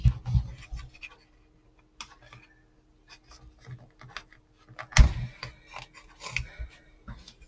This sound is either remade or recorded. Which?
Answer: recorded